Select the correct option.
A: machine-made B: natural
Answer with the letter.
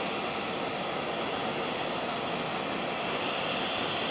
B